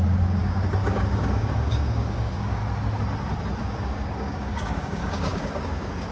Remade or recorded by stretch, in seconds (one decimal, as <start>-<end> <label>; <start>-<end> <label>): 0.0-2.6 remade; 2.6-3.6 recorded; 3.6-6.1 remade